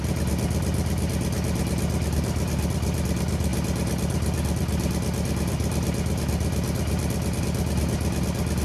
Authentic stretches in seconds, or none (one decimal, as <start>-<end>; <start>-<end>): 0.0-8.6